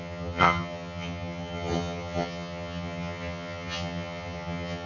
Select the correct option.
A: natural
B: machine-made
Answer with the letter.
B